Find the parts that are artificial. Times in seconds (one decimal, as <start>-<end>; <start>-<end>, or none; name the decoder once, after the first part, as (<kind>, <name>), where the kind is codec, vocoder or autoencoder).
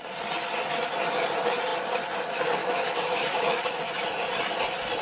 2.6-3.4 (autoencoder, DAC-VAE)